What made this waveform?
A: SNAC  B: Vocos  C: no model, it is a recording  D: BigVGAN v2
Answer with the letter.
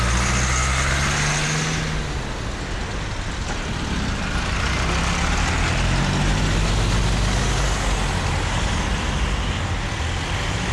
C